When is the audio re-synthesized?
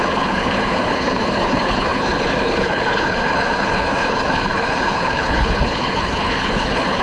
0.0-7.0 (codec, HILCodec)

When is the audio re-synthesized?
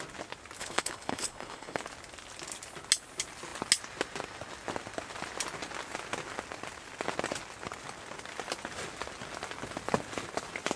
0.6-1.8 (codec, HILCodec)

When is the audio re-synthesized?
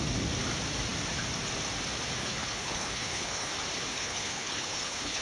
2.2-3.5 (codec, HILCodec); 3.9-5.2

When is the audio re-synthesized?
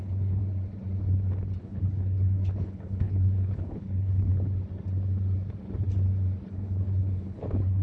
0.0-0.4 (codec, HILCodec); 1.6-4.3; 6.5-7.8